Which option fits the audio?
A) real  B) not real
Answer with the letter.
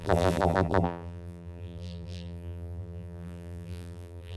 B